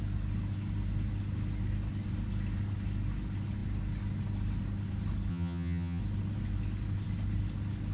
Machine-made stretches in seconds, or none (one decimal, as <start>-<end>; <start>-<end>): 5.3-6.0